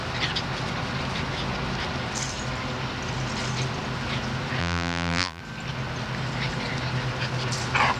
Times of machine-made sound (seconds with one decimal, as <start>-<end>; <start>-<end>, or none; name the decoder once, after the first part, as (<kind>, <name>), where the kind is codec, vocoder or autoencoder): 4.6-5.4 (vocoder, BigVGAN v2)